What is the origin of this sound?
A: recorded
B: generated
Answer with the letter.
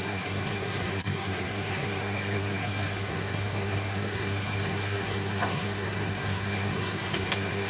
B